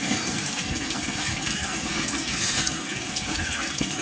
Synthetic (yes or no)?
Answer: yes